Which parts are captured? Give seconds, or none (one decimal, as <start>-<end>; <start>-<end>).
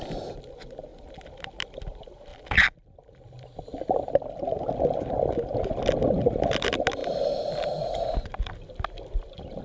0.0-0.9; 1.8-2.3; 4.1-9.6